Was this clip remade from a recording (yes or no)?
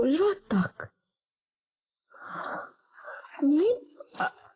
yes